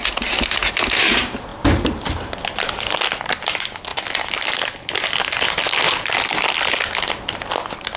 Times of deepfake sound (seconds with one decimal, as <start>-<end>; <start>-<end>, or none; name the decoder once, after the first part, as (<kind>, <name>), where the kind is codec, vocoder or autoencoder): none